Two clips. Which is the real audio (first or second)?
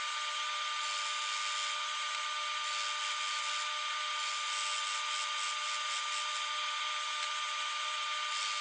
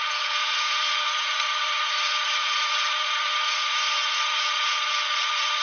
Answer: first